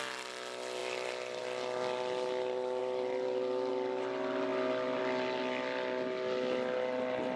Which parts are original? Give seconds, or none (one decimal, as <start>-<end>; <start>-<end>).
0.0-0.8; 1.4-2.8; 3.7-7.4

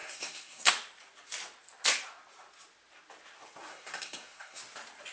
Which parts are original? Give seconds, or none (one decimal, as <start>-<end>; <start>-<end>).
0.7-3.7; 4.6-5.1

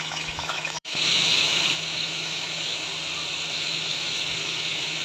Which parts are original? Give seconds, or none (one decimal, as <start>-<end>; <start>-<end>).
2.9-3.5

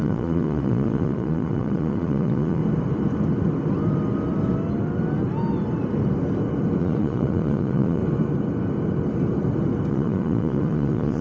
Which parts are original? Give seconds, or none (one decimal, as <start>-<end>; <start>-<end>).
2.6-6.8; 8.0-9.9

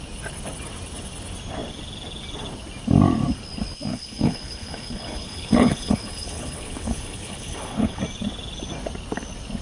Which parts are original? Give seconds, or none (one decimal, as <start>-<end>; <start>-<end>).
0.0-3.9; 8.0-9.6

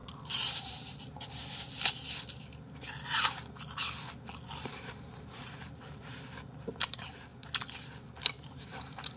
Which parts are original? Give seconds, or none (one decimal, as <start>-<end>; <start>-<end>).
1.4-4.6; 7.3-8.2

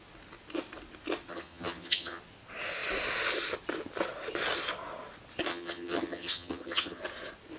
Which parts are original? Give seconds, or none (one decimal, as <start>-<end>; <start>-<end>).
0.0-1.3; 2.2-5.5; 7.0-7.6

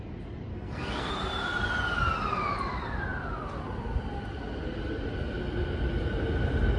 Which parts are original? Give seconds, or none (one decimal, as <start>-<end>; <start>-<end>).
0.0-0.5; 1.1-6.8